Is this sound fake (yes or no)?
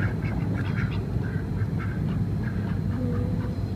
yes